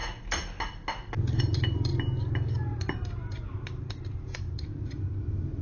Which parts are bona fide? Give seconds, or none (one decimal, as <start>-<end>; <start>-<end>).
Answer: 0.0-1.4; 1.9-4.0